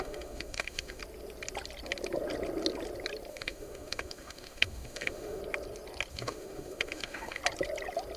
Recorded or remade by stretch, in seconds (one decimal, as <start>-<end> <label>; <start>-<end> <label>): 0.0-1.0 remade; 1.0-3.3 recorded; 3.3-5.4 remade; 5.4-6.1 recorded; 6.1-7.4 remade; 7.4-8.2 recorded